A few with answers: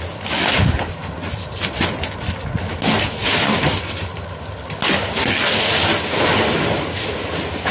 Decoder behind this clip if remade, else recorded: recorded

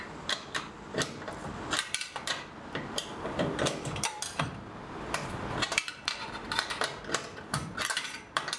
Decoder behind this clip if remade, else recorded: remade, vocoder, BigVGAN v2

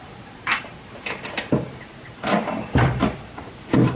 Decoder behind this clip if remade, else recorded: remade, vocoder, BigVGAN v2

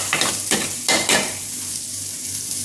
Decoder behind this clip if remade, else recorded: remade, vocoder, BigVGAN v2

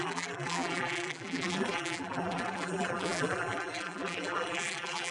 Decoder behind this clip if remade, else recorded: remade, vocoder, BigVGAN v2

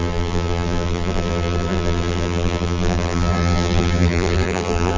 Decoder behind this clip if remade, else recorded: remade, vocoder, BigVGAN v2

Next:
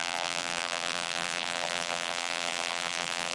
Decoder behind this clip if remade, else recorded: remade, vocoder, BigVGAN v2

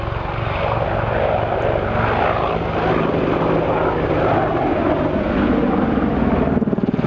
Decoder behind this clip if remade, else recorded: recorded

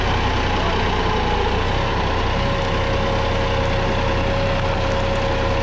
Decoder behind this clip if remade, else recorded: recorded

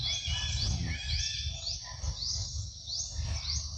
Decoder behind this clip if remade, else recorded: recorded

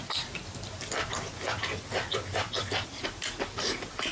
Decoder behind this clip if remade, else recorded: recorded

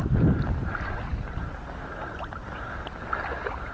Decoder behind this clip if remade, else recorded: recorded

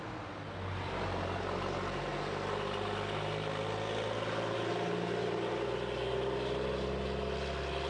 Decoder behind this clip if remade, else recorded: recorded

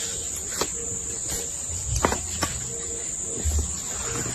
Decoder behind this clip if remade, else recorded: recorded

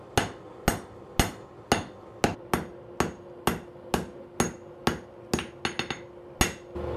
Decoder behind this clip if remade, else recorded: recorded